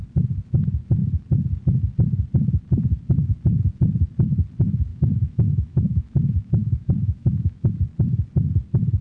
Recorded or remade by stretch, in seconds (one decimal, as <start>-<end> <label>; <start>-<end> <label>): 0.0-4.9 recorded; 4.9-7.7 remade; 7.7-9.0 recorded